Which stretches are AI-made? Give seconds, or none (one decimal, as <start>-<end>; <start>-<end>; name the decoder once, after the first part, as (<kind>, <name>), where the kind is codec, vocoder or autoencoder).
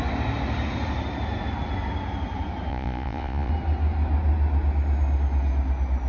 2.7-3.5 (vocoder, Vocos)